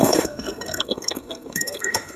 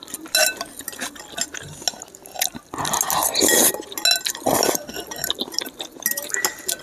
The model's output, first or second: first